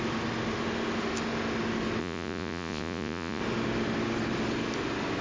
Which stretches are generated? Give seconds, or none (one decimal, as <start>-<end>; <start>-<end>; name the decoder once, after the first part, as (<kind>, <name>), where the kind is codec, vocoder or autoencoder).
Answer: 2.0-3.4 (vocoder, Vocos)